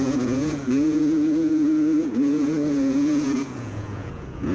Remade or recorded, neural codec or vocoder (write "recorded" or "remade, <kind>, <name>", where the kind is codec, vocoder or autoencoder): remade, vocoder, Vocos